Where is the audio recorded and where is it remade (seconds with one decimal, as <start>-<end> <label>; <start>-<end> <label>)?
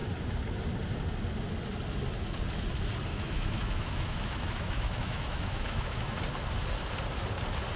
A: 0.0-3.1 recorded; 3.1-6.2 remade; 6.2-7.8 recorded